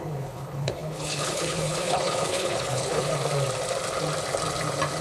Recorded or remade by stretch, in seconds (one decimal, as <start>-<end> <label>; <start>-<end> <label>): 0.0-3.1 remade; 3.1-5.0 recorded